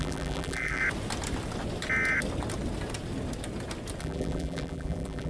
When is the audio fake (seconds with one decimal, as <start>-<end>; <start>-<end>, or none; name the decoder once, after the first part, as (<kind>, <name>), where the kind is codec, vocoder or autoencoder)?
0.0-0.8 (vocoder, BigVGAN v2); 4.0-5.3